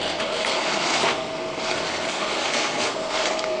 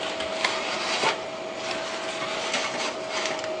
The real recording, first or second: second